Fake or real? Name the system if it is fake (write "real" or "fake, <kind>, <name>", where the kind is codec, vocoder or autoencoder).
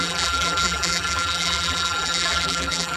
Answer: fake, vocoder, BigVGAN v2